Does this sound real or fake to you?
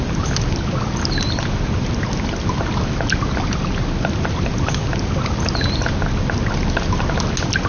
real